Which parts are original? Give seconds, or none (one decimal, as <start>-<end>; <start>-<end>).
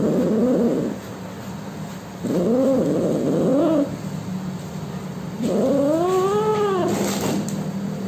0.0-8.1